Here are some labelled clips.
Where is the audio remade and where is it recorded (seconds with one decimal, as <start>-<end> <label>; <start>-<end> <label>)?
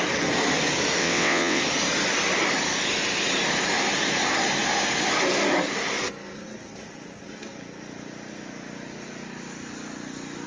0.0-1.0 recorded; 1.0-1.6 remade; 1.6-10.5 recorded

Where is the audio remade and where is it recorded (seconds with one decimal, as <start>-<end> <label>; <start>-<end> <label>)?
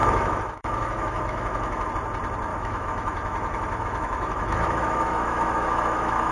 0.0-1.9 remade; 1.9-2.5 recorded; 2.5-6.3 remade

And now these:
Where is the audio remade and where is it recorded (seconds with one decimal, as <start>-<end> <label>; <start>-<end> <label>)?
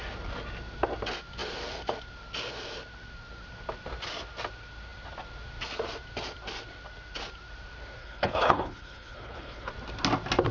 0.0-8.0 recorded; 8.0-9.7 remade; 9.7-10.5 recorded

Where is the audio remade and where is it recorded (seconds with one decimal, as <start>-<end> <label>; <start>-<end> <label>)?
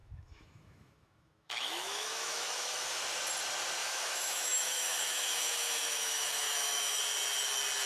0.0-3.0 remade; 3.0-3.8 recorded; 3.8-7.0 remade; 7.0-7.9 recorded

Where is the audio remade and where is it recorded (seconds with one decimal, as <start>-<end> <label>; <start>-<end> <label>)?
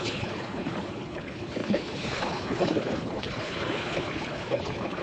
0.0-5.0 remade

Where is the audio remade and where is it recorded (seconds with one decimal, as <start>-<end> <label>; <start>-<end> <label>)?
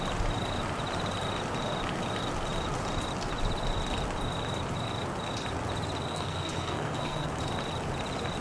0.0-6.1 recorded; 6.1-7.3 remade; 7.3-8.4 recorded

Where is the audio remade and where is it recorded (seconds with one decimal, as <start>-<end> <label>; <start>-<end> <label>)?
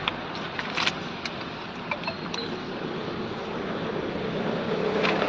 0.0-2.6 recorded; 2.6-5.3 remade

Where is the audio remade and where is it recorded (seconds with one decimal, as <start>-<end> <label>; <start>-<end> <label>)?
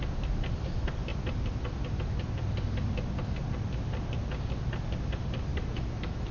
0.0-5.5 recorded; 5.5-6.3 remade